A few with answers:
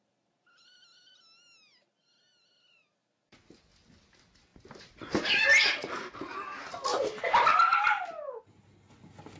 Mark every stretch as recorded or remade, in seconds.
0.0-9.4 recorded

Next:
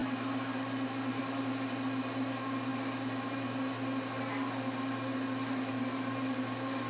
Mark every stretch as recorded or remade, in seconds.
0.0-6.9 recorded